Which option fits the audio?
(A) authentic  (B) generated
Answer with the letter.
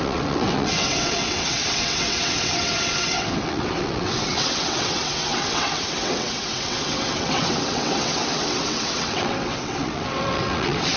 B